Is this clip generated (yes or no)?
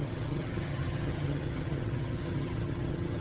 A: yes